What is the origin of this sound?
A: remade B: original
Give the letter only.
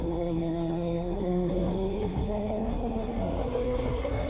A